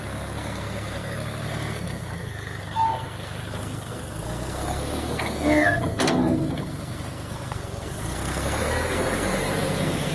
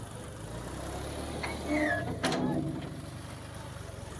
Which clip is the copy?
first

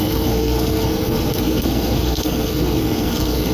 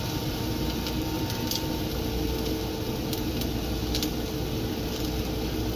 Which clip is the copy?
first